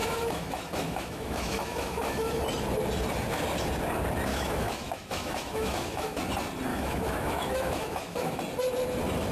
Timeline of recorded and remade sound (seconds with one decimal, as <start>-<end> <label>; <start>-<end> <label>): 0.0-2.4 remade; 2.4-4.3 recorded; 4.3-6.2 remade; 6.2-6.7 recorded; 6.7-8.4 remade; 8.4-9.3 recorded